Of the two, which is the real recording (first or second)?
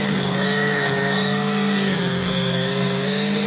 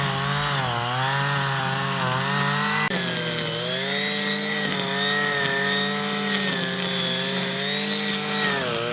second